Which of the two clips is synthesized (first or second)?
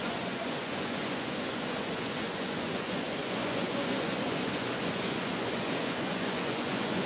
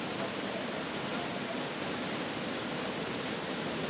first